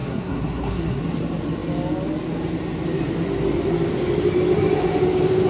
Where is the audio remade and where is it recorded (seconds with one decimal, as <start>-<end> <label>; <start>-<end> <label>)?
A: 0.0-1.0 remade; 1.0-5.5 recorded

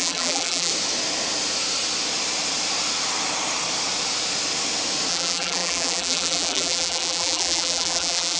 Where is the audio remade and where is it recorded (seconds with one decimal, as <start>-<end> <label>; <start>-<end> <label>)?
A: 0.0-0.7 remade; 0.7-5.1 recorded; 5.1-8.4 remade